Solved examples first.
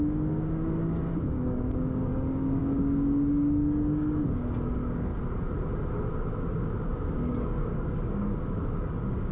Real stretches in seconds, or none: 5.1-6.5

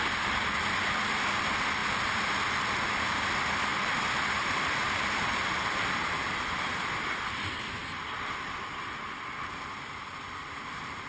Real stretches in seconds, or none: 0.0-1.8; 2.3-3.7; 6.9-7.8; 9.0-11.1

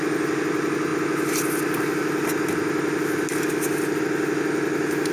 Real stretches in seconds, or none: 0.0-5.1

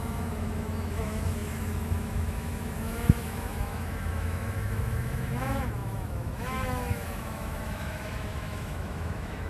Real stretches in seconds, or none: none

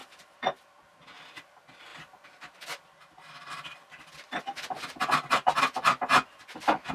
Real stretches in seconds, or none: 0.0-1.9; 6.0-6.9

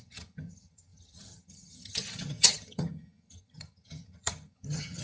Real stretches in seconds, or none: none